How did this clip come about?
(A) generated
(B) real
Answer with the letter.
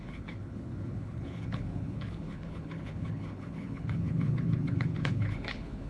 A